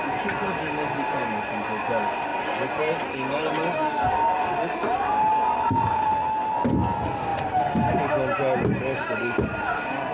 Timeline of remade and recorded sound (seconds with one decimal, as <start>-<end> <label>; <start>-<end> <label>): 0.0-10.1 recorded